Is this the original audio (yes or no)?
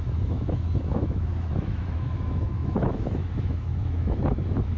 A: no